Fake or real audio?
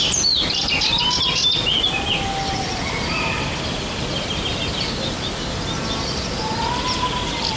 real